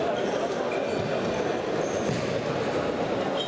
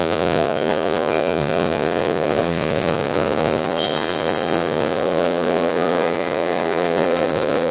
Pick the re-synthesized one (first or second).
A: second